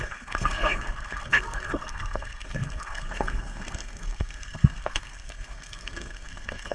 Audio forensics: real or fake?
fake